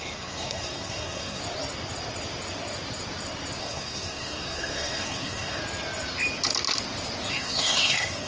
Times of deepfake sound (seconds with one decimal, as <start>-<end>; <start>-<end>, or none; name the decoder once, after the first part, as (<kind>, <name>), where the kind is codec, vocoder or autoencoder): 0.0-1.4 (codec, SNAC); 3.6-5.6; 7.3-8.3